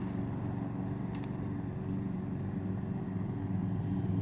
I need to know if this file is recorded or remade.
recorded